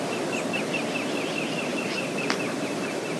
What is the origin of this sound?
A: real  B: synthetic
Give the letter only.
A